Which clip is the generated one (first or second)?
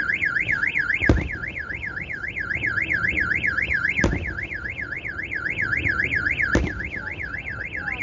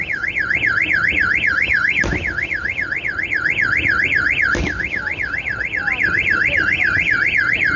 first